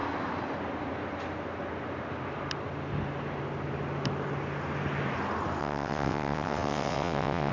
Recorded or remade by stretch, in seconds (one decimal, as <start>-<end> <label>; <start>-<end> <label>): 0.0-5.6 recorded; 5.6-7.5 remade